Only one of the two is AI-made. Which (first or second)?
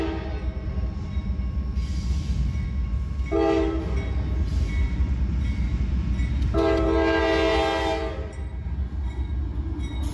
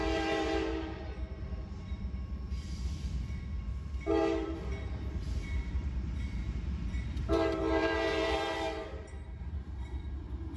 second